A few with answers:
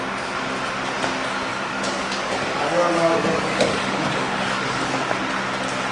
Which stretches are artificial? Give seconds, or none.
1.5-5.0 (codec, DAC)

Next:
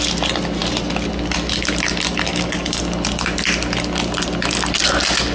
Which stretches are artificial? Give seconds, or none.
2.3-2.8 (codec, DAC)

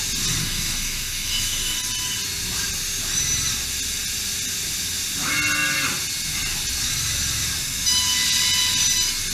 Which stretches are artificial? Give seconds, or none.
0.4-1.8 (codec, DAC)

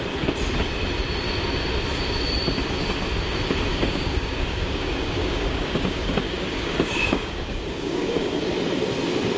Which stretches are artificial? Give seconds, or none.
3.7-8.5 (codec, DAC)

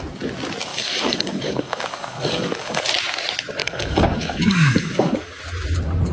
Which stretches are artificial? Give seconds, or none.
0.7-2.8 (codec, DAC); 3.6-5.4